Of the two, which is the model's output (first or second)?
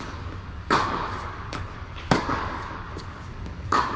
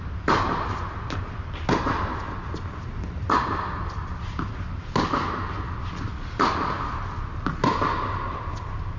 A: first